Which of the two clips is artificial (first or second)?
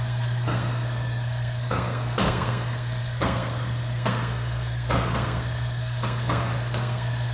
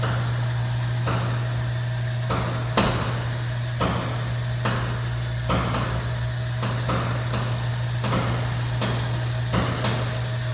first